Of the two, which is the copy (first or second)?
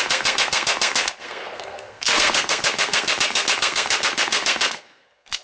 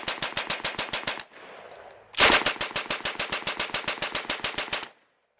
first